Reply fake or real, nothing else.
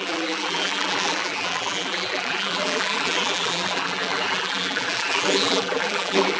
fake